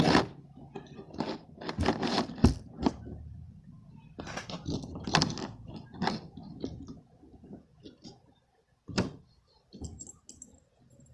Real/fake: real